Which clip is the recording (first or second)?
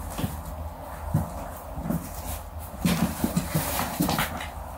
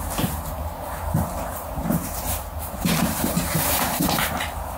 first